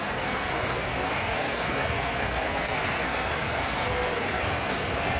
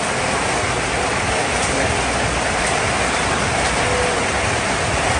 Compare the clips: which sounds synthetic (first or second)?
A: first